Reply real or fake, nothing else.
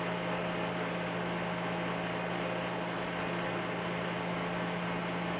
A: real